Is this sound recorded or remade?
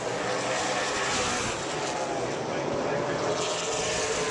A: recorded